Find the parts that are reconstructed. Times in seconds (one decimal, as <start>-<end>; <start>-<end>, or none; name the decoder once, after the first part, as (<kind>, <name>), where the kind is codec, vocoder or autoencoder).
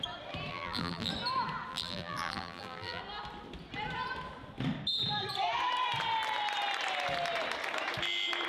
0.5-1.1 (vocoder, BigVGAN v2); 1.7-3.0